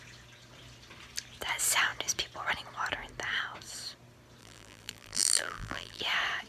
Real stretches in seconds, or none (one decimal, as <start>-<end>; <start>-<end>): 0.0-4.4; 6.0-6.5